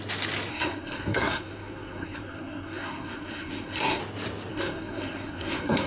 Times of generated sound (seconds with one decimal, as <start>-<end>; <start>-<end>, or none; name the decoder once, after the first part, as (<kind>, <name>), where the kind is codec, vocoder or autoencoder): 0.5-4.0 (codec, SNAC); 4.5-5.9